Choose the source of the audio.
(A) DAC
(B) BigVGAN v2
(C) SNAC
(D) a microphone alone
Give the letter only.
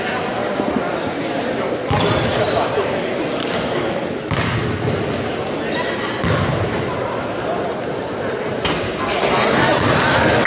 D